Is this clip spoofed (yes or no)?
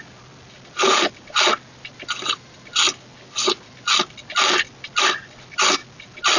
no